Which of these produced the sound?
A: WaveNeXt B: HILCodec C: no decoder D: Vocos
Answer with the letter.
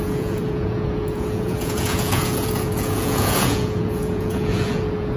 D